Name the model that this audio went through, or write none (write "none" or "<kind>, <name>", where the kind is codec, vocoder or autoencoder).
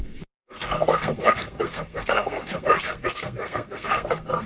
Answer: codec, SNAC